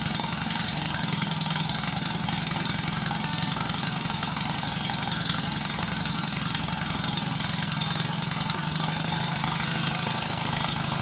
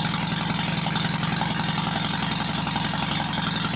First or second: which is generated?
first